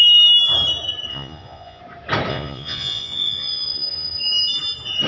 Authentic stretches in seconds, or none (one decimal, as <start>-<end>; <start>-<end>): 0.0-1.1; 1.8-2.3; 4.2-5.1

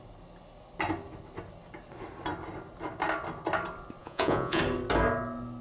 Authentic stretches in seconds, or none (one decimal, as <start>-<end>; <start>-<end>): 0.0-4.0; 4.6-5.6

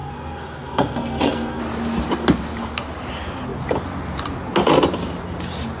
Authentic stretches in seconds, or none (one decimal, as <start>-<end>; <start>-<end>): 1.6-5.8

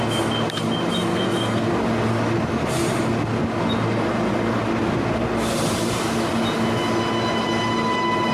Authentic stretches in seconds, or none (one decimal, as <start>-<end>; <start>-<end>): 0.0-1.1; 1.7-8.3

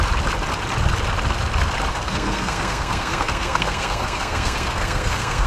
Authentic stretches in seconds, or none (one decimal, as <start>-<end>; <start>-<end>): 0.0-1.9

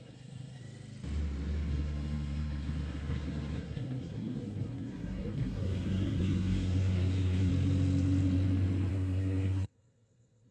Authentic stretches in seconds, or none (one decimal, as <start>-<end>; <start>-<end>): 0.6-1.7; 7.5-8.9

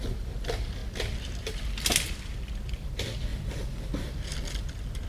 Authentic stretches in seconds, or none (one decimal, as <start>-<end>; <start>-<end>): 0.0-3.3; 3.9-5.1